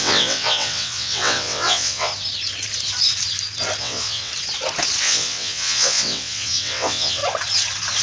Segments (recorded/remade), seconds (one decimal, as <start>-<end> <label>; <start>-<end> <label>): 0.0-2.1 remade; 2.1-3.8 recorded; 3.8-4.3 remade; 4.3-5.0 recorded; 5.0-7.2 remade; 7.2-8.0 recorded